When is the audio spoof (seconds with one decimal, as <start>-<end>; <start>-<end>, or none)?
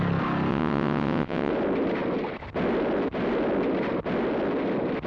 0.5-1.5